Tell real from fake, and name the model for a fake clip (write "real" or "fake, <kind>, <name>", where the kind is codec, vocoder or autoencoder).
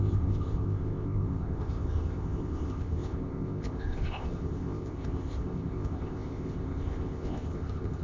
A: fake, codec, ZipCodec